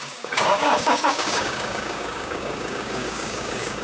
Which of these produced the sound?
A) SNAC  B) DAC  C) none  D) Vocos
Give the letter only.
B